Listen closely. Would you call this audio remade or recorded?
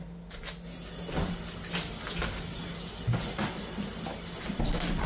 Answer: recorded